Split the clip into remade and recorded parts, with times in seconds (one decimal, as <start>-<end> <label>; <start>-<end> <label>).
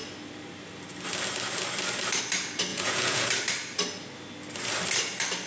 0.0-2.7 recorded; 2.7-3.3 remade; 3.3-5.5 recorded